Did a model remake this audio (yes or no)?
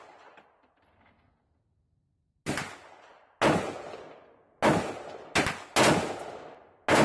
no